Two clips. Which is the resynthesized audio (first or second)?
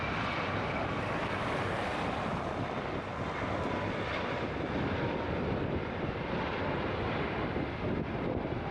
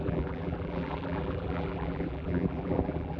second